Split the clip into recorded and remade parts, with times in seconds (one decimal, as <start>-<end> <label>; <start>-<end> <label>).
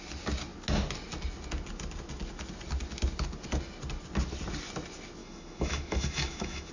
0.0-5.2 recorded; 5.2-6.7 remade